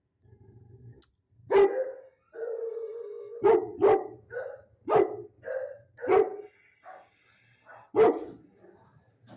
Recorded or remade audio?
recorded